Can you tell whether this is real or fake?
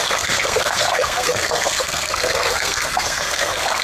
fake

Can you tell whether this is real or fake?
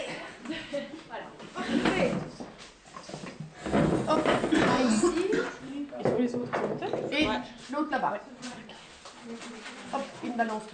real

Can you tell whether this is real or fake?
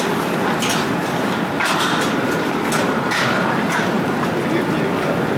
real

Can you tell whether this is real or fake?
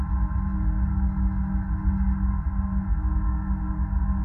real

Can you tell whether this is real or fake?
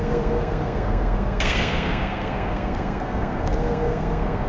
fake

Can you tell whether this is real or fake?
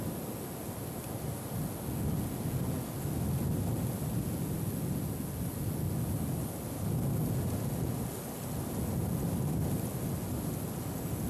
real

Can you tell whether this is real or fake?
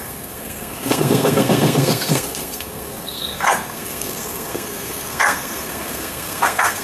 fake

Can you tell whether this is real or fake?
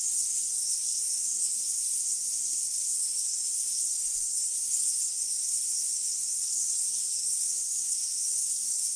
fake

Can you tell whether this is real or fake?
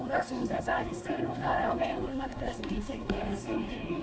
fake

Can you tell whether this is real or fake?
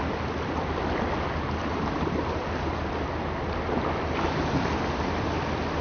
real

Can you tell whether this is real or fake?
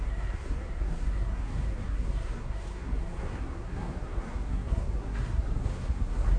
fake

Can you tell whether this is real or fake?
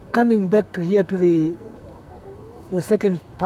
fake